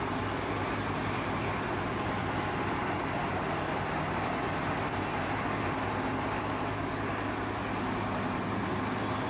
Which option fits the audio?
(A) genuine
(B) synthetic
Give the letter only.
A